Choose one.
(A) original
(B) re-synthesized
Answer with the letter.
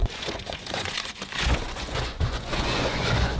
B